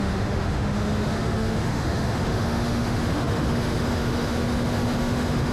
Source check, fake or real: fake